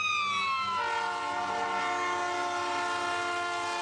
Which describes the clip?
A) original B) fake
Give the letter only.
A